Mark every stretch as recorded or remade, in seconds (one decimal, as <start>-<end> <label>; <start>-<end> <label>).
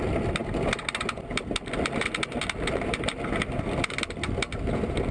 0.0-5.1 recorded